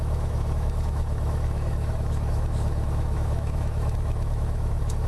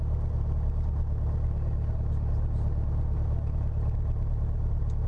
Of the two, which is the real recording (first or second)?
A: second